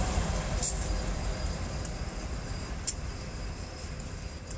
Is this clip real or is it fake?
fake